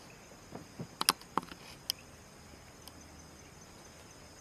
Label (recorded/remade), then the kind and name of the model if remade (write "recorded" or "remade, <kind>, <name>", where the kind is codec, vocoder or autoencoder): recorded